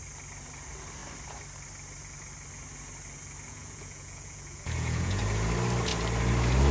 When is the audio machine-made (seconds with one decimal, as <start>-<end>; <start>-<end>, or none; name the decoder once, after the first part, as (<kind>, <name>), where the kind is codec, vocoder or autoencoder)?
3.5-5.2 (vocoder, Vocos)

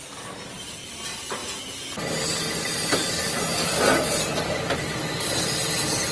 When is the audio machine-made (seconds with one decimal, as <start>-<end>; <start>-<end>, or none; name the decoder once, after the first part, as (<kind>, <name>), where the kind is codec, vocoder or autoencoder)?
none

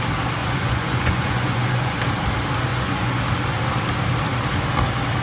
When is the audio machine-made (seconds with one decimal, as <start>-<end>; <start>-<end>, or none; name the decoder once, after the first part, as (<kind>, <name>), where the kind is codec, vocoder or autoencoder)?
0.4-2.0 (vocoder, Vocos); 2.7-3.2

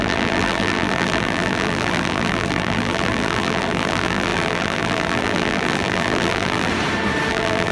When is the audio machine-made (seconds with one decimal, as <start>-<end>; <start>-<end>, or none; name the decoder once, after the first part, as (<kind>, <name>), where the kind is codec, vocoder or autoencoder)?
0.0-6.7 (vocoder, BigVGAN v2); 7.3-7.7

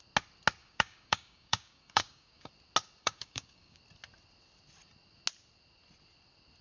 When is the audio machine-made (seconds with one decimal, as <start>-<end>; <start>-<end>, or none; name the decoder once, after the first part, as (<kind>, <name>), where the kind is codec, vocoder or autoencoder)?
0.6-2.5 (codec, DAC); 3.0-3.8